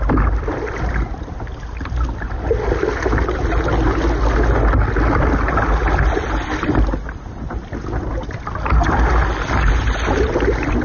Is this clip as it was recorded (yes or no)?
yes